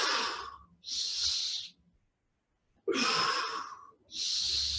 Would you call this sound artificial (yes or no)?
no